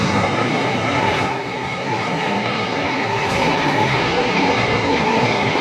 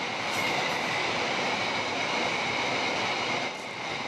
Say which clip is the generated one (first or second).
first